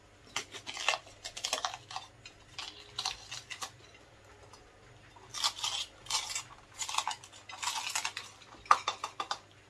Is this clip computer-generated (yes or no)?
no